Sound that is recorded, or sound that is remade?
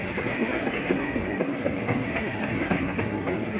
remade